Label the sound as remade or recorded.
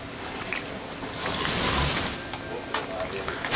recorded